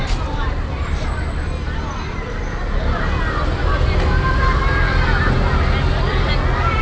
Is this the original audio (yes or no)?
yes